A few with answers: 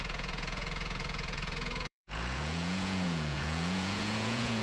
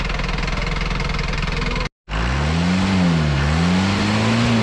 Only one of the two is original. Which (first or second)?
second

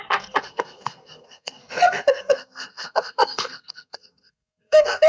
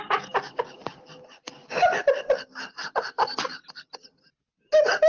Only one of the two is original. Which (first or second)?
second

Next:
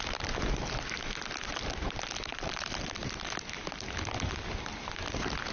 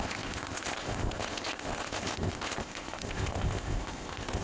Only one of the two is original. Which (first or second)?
first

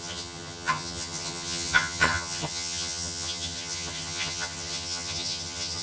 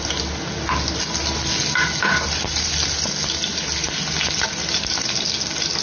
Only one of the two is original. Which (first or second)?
second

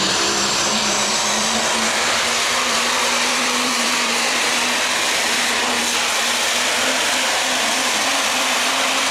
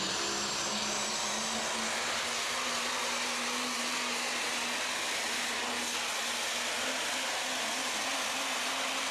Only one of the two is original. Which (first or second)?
second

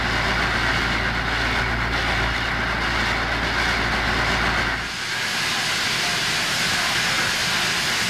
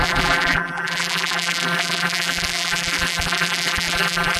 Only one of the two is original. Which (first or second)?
first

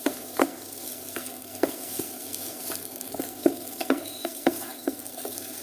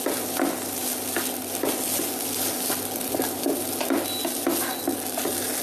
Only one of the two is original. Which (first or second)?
second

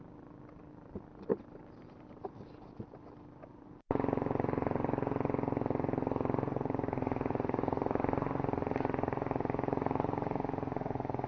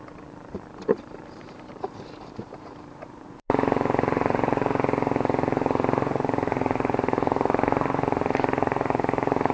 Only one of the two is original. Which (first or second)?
first